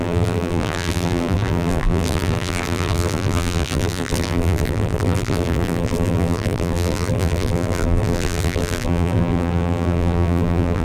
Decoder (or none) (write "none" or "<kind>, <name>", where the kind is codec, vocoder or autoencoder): vocoder, BigVGAN v2